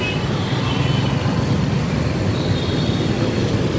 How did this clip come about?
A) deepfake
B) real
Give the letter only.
B